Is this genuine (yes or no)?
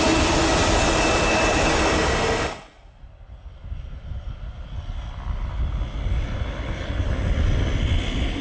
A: yes